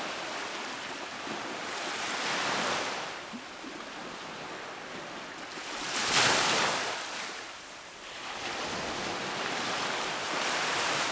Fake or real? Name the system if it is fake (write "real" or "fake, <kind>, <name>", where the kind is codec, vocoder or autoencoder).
real